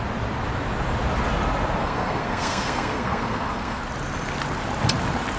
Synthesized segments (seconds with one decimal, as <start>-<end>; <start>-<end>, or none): 1.8-3.8